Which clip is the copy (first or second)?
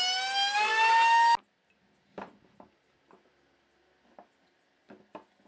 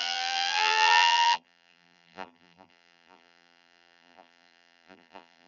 second